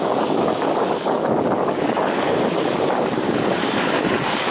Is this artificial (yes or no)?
yes